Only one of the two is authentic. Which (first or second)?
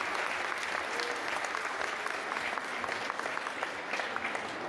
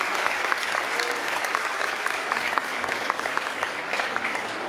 first